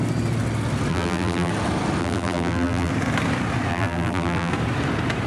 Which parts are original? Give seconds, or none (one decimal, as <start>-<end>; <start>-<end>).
0.0-0.9; 1.5-2.0; 2.9-3.7; 4.5-5.3

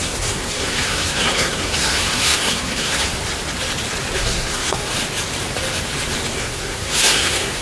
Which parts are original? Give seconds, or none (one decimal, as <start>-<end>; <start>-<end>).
3.1-4.2; 4.9-6.4

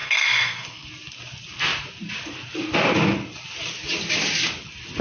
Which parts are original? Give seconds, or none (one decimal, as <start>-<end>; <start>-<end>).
0.9-5.0

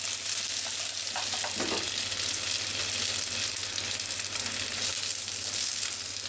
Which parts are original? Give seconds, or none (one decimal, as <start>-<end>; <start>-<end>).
0.0-6.3

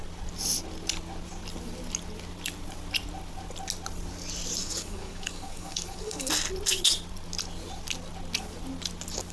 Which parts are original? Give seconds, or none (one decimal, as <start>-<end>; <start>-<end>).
0.0-4.6; 6.3-9.3

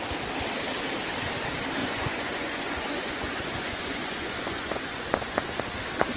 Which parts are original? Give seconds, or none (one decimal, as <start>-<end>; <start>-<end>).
0.0-1.8; 5.5-6.2

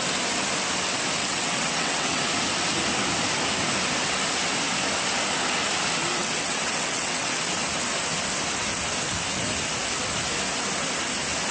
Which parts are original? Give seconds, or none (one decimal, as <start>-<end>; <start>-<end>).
0.0-1.2; 2.2-6.2; 7.3-11.5

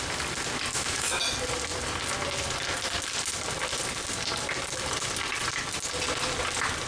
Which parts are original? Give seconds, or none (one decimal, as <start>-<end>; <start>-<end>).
0.0-0.7; 1.2-6.9